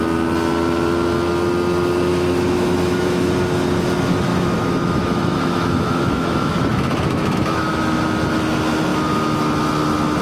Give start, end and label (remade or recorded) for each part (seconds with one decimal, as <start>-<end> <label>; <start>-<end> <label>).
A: 0.0-2.1 recorded; 2.1-3.3 remade; 3.3-4.3 recorded; 4.3-8.0 remade; 8.0-10.2 recorded